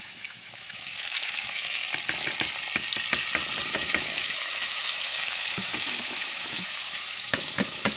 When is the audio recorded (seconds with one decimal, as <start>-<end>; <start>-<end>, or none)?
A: 1.8-3.7